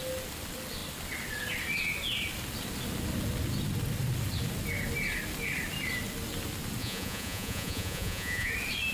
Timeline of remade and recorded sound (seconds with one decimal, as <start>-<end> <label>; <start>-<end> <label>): 0.0-6.8 recorded; 6.8-8.5 remade; 8.5-8.9 recorded